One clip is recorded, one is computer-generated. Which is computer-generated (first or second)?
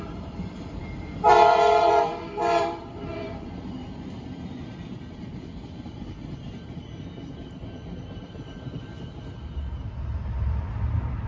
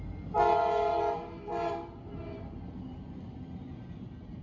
first